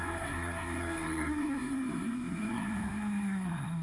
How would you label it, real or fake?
fake